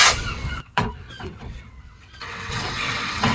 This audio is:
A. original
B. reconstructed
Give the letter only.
B